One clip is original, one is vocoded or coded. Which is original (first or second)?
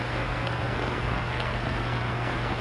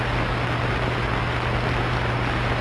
second